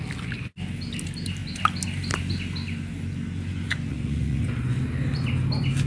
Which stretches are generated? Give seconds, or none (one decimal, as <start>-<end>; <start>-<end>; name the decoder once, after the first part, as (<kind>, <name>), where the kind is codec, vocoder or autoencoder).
3.9-4.8 (vocoder, Vocos)